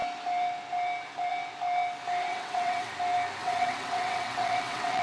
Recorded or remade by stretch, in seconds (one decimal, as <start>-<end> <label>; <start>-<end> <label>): 0.0-2.3 recorded; 2.3-2.9 remade; 2.9-3.4 recorded; 3.4-5.0 remade